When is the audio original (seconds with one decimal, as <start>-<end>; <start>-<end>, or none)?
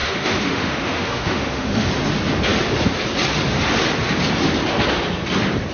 1.9-5.7